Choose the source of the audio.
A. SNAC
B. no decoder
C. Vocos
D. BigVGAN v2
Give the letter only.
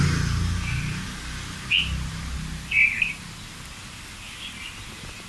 B